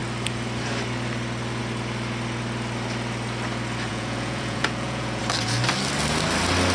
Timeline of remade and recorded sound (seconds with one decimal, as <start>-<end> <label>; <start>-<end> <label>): 0.0-3.9 recorded; 3.9-5.2 remade; 5.2-6.7 recorded